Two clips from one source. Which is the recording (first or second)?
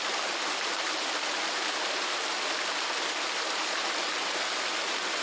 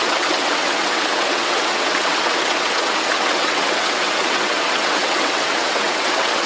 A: first